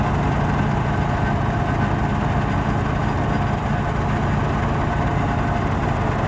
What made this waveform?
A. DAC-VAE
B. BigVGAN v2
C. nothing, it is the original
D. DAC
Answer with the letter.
C